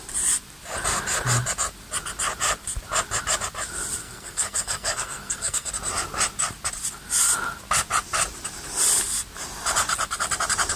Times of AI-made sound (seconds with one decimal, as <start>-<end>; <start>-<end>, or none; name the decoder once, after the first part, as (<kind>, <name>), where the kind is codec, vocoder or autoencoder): 4.0-5.7 (codec, SNAC)